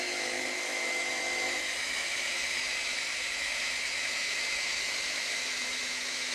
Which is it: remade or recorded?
remade